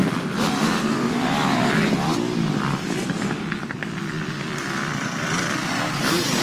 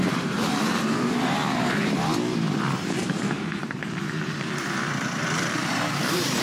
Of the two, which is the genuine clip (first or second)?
first